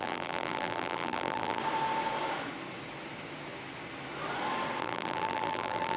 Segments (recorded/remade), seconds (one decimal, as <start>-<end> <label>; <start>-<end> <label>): 0.0-1.6 remade; 1.6-4.8 recorded; 4.8-6.0 remade